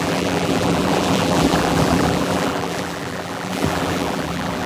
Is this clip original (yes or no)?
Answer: no